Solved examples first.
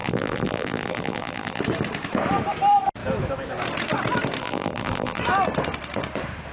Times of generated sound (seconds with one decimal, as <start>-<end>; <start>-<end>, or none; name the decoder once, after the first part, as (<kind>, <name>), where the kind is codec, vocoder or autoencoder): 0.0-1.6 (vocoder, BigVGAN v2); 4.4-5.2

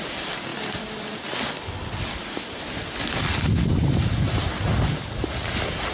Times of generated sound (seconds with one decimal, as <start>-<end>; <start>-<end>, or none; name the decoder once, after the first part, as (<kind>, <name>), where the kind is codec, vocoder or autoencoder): none

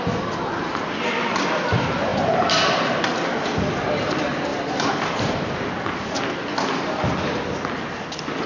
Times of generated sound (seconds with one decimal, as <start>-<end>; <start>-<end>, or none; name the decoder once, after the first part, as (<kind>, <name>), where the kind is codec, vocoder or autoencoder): 4.5-6.2 (vocoder, BigVGAN v2)

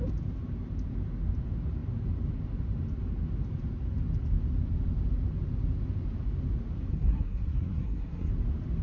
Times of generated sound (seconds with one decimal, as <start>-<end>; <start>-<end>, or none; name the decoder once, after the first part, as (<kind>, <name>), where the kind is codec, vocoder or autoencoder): 6.9-8.3 (codec, SNAC)

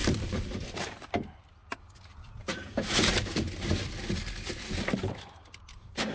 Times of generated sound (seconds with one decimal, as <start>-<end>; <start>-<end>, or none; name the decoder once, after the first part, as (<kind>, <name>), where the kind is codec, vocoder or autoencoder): 0.0-1.6 (vocoder, BigVGAN v2); 2.3-3.7; 5.0-6.1

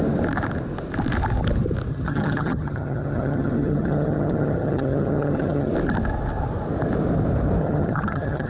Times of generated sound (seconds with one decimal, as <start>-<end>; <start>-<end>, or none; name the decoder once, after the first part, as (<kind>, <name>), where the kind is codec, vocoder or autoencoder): 1.9-5.7 (vocoder, HiFi-GAN); 7.6-8.5

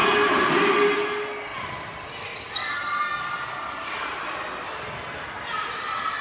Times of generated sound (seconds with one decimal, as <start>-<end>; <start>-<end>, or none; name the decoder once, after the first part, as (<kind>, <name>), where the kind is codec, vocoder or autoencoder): none